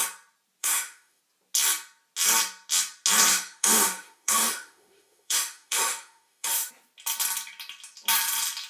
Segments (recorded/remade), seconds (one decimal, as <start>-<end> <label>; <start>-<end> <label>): 0.0-0.6 recorded; 0.6-1.2 remade; 1.2-3.3 recorded; 3.3-6.7 remade; 6.7-8.7 recorded